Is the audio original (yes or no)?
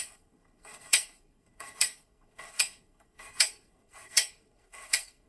no